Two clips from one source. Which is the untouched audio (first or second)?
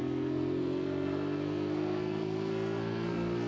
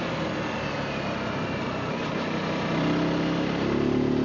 second